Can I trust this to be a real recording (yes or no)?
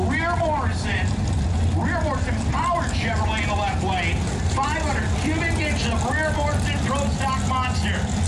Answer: yes